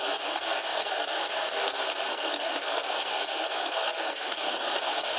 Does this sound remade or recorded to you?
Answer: remade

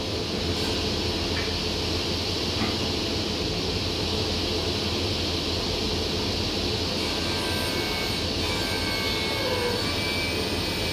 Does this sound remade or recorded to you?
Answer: recorded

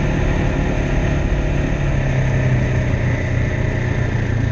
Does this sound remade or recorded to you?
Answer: recorded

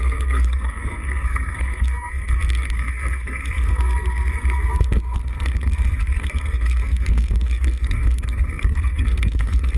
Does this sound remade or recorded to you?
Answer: remade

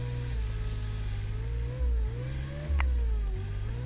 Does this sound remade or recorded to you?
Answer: recorded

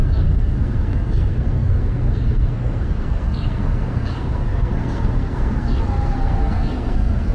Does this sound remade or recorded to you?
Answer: remade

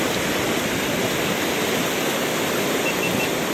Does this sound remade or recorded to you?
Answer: recorded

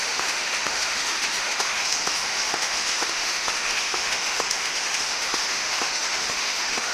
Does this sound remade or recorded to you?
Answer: remade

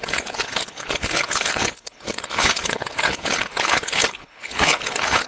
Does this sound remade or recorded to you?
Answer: remade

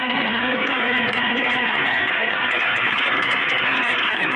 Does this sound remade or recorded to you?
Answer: remade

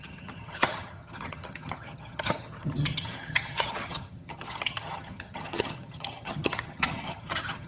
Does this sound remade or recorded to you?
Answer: remade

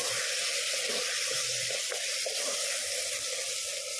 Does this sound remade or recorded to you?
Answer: recorded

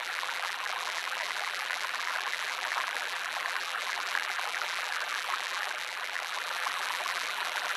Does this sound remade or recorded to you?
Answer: remade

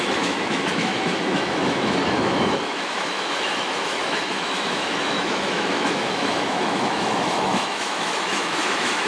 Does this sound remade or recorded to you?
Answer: remade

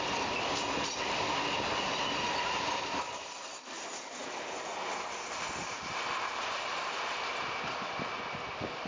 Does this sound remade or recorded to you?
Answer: recorded